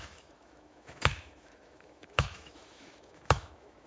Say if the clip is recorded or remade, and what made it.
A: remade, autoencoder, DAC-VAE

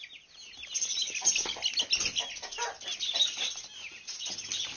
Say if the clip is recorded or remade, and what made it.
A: recorded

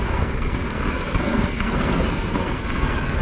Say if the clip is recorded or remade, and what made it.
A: remade, codec, SNAC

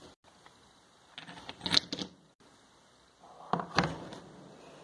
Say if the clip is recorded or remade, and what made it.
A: recorded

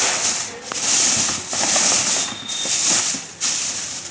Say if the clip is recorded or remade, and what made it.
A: recorded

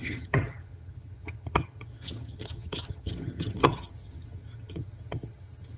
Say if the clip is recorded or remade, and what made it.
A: remade, vocoder, HiFi-GAN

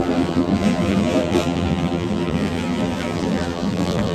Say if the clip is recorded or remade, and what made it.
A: remade, vocoder, BigVGAN v2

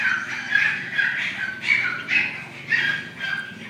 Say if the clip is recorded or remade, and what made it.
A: recorded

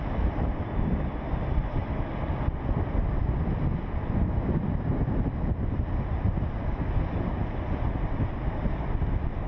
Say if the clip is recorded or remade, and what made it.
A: recorded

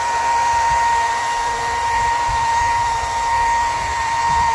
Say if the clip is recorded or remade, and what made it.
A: remade, vocoder, BigVGAN v2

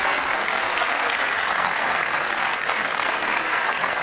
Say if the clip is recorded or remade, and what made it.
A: remade, codec, SNAC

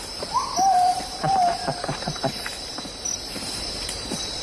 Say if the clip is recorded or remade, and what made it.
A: remade, vocoder, BigVGAN v2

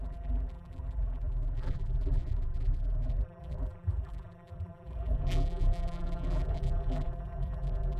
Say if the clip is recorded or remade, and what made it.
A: remade, vocoder, BigVGAN v2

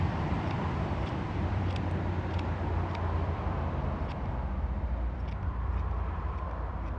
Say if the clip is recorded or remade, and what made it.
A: remade, vocoder, BigVGAN v2